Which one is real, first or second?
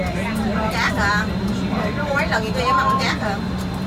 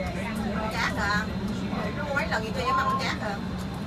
first